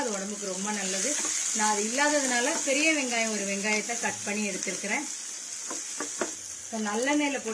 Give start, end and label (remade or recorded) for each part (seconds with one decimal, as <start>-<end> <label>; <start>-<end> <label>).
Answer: 0.0-7.5 recorded